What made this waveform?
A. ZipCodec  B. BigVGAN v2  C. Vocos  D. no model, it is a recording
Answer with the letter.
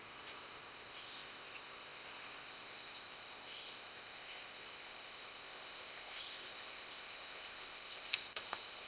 A